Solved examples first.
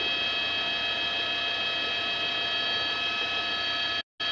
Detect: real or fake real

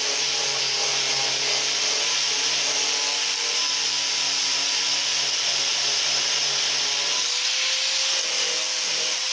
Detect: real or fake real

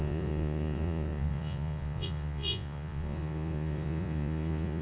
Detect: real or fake fake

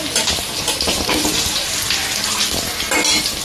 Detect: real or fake real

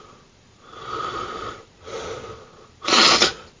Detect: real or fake fake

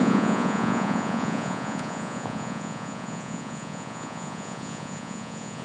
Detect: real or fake fake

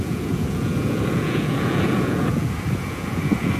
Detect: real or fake fake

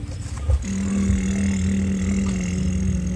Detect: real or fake real